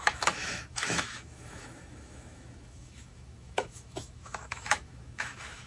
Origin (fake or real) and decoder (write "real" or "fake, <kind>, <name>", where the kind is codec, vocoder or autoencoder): fake, autoencoder, DAC-VAE